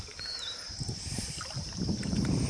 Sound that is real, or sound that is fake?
fake